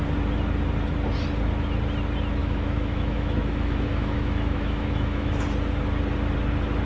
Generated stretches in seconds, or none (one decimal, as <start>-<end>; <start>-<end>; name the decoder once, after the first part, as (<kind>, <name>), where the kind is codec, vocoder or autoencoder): 2.4-5.3 (autoencoder, DAC-VAE)